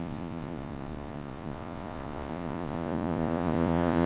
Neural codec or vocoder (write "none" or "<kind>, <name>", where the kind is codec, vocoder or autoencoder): vocoder, Vocos